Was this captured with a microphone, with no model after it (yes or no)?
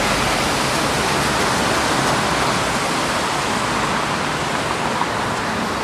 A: yes